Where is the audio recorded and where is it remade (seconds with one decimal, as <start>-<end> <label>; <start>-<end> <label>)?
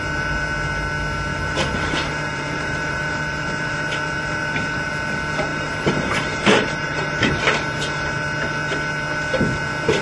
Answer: 0.0-1.3 recorded; 1.3-4.9 remade; 4.9-5.5 recorded; 5.5-7.3 remade; 7.3-10.0 recorded